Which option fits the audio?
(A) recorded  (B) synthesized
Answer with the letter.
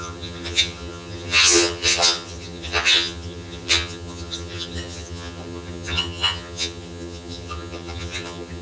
B